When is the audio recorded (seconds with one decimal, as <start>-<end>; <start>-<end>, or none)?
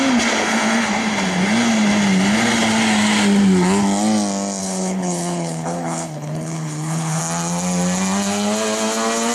0.0-4.6; 7.2-9.3